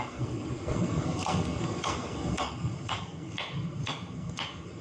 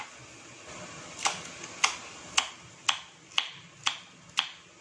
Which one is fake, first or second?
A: first